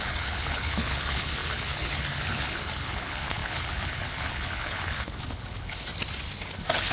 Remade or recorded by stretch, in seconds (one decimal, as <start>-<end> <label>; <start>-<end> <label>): 0.0-5.9 remade; 5.9-6.5 recorded; 6.5-6.9 remade